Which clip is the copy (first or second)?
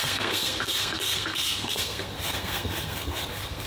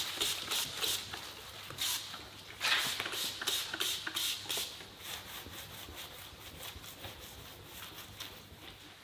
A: first